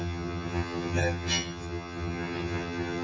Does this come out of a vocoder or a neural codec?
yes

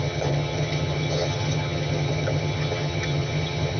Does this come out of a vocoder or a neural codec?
yes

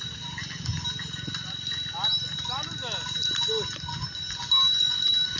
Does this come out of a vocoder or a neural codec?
no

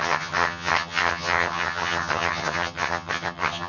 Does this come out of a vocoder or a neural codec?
yes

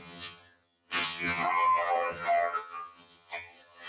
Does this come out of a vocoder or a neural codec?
yes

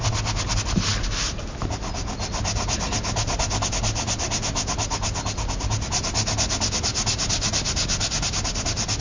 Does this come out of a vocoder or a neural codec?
no